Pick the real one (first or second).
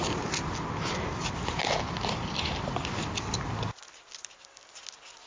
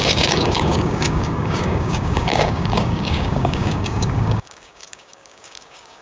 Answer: first